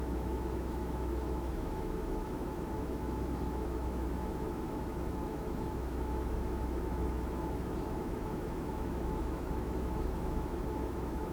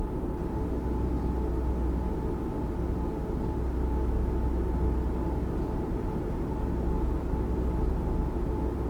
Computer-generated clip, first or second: first